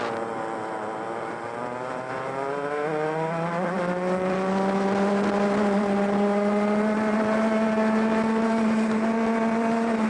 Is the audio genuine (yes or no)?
yes